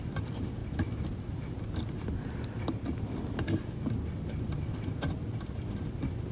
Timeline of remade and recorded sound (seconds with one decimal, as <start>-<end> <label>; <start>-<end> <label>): 0.0-6.3 recorded